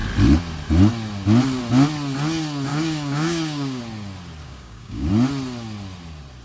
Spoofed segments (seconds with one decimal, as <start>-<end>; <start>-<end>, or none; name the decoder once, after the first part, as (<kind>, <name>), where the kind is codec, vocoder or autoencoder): 2.7-3.8 (codec, DAC); 4.4-5.1

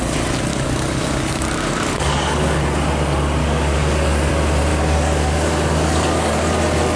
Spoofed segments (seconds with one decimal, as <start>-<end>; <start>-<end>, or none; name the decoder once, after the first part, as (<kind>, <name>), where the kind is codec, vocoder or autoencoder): 0.5-2.6 (codec, DAC); 3.4-4.3; 4.7-6.5

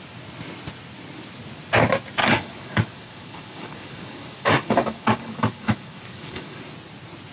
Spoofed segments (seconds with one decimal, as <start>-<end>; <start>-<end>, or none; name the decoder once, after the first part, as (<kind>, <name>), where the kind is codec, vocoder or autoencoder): 2.2-6.6 (codec, DAC)

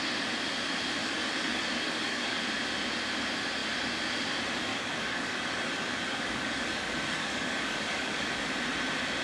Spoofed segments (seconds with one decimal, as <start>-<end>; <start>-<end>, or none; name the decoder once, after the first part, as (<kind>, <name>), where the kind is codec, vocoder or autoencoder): 1.0-2.4 (codec, DAC); 4.7-8.5

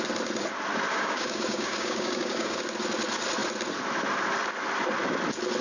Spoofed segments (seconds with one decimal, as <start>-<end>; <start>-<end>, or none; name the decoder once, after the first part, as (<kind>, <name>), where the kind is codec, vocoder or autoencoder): 0.9-2.6 (codec, DAC)

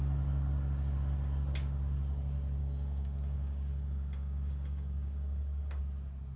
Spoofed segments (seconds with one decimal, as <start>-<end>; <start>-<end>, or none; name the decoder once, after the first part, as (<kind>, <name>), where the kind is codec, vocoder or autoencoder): 2.6-5.8 (codec, DAC)